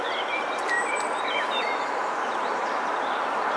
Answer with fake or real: fake